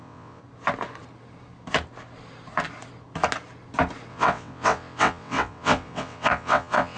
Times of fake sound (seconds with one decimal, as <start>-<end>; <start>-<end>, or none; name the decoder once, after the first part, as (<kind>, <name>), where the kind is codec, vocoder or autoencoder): 0.0-0.4 (vocoder, WaveNeXt); 4.1-7.0